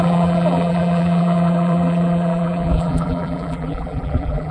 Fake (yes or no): yes